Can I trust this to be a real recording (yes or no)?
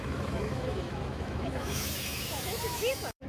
no